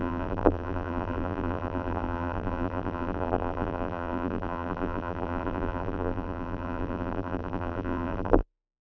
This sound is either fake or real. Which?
fake